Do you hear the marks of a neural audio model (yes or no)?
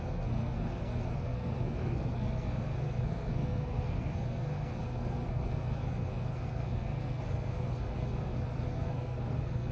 yes